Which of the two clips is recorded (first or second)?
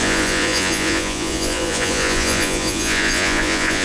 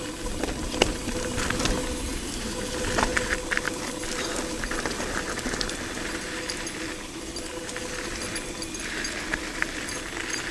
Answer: second